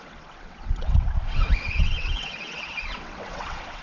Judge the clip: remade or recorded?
remade